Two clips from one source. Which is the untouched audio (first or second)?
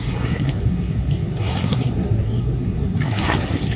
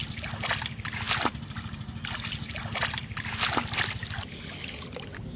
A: second